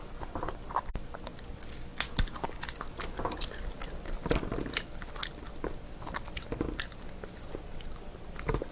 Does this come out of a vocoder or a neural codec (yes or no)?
no